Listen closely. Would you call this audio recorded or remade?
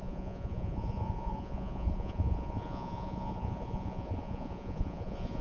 remade